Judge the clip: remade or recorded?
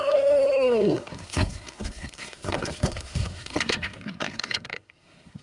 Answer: remade